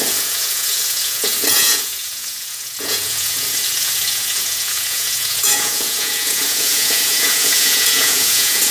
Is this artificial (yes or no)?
yes